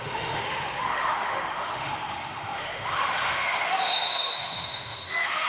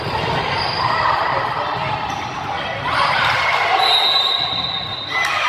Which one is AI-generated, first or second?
first